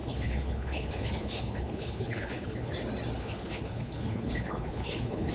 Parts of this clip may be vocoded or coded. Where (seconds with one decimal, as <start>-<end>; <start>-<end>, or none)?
0.0-2.7; 3.2-5.3